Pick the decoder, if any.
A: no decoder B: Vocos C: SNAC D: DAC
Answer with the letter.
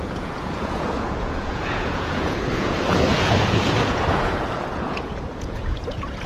B